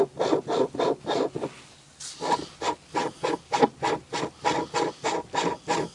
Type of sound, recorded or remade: recorded